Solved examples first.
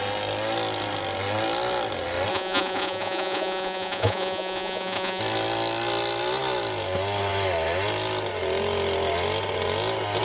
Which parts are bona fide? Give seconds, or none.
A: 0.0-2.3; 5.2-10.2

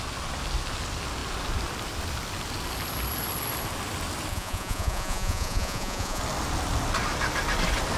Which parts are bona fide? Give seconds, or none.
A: 0.0-4.3; 6.2-8.0

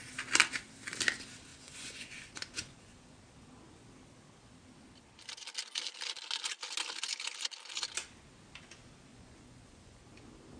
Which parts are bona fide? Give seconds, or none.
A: 0.0-1.5; 3.2-9.1; 10.0-10.6

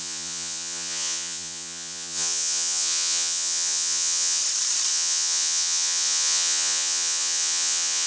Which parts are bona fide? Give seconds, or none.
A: 4.4-4.9

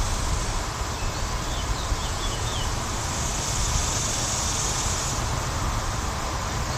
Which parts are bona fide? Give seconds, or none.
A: 0.0-2.0; 2.6-6.8

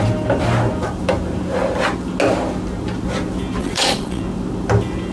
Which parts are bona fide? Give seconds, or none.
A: 0.0-3.6; 4.2-5.1

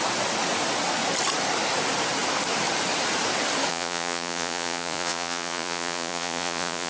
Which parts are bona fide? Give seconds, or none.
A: 0.0-3.7